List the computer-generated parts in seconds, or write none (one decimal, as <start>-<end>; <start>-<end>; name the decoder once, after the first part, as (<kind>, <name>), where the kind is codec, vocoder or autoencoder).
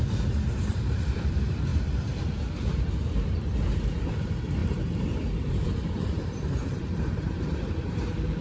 0.0-1.7 (vocoder, BigVGAN v2); 4.0-8.4